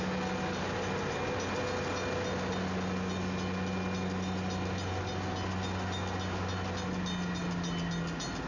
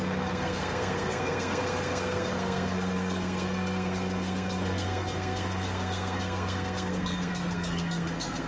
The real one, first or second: first